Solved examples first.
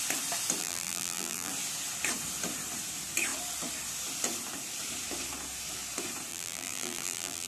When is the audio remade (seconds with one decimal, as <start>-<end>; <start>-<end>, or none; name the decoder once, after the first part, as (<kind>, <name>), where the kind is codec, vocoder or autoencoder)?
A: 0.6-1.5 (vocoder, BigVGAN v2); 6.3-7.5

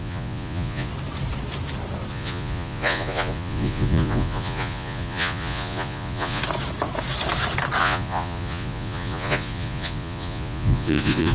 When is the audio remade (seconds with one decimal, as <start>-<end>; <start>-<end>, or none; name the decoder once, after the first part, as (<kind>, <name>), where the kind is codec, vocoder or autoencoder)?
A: 0.0-0.9 (vocoder, Vocos); 2.1-6.4; 7.8-11.3

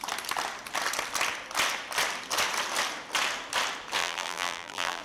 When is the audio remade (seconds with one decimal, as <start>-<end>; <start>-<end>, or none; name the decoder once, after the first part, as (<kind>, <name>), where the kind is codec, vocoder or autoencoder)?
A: 4.0-5.0 (vocoder, BigVGAN v2)